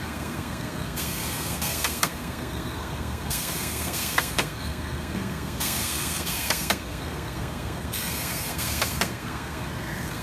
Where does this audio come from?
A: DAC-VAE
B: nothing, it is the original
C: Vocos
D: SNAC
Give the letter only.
D